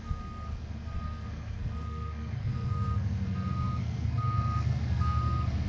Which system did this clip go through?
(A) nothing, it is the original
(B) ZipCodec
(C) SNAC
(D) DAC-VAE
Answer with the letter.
C